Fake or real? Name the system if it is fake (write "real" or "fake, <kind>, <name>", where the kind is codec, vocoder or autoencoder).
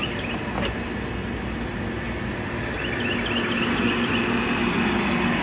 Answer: real